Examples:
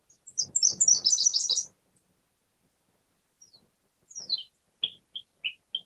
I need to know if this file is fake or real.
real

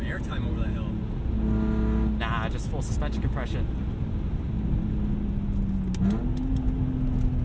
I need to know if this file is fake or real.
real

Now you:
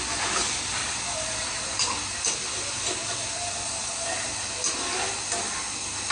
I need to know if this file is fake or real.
fake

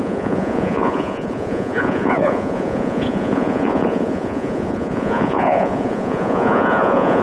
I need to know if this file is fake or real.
fake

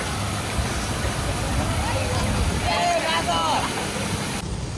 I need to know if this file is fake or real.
real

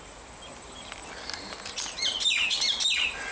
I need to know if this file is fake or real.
real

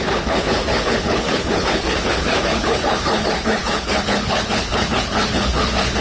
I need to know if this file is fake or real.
fake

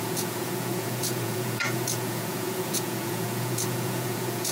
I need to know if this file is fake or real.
fake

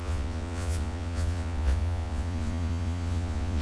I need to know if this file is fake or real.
fake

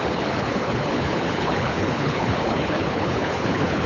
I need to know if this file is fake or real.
fake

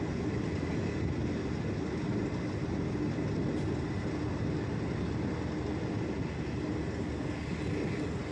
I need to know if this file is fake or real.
real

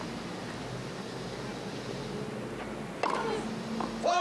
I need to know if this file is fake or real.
real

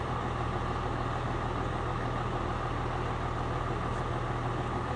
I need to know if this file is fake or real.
real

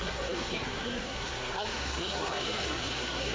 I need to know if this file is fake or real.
fake